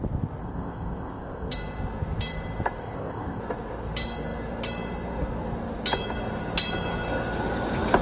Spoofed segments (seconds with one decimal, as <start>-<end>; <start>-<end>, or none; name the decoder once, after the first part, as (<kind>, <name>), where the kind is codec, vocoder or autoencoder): 0.4-1.5 (codec, ZipCodec); 2.8-3.4